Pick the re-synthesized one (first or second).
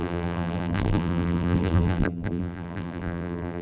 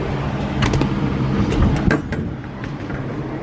first